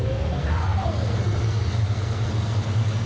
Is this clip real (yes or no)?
no